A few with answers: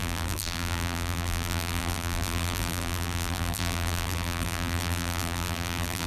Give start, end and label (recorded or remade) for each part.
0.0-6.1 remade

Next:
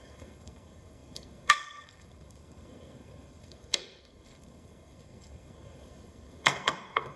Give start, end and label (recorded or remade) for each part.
0.0-7.2 remade

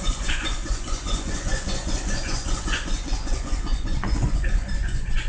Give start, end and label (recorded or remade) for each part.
0.0-5.3 remade